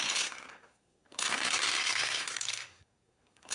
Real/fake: fake